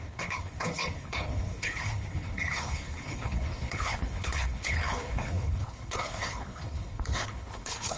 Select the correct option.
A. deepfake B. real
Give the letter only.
A